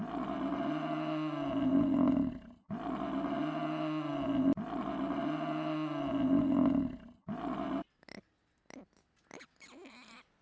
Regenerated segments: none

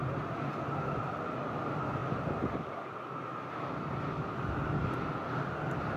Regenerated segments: none

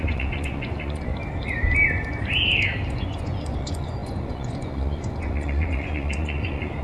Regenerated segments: 0.0-1.1 (vocoder, Vocos); 2.9-6.8